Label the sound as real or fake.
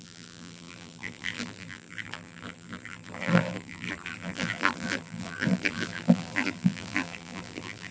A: fake